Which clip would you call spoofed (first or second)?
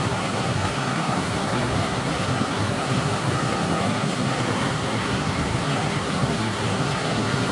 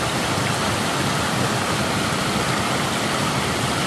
first